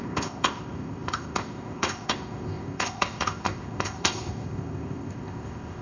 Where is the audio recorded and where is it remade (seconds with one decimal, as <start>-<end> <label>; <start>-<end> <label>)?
0.0-5.8 remade